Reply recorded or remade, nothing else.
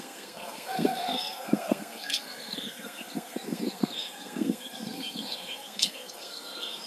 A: remade